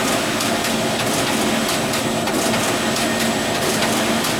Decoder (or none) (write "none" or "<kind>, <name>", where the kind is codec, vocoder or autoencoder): none